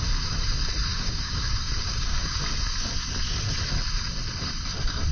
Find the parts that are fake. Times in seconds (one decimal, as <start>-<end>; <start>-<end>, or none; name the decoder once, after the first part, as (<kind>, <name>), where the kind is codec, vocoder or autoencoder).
0.9-2.4 (codec, DAC)